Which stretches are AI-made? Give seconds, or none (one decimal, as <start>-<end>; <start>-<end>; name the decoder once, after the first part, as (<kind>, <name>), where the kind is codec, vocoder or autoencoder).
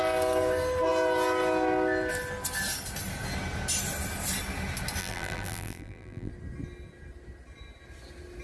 5.0-6.3 (vocoder, BigVGAN v2)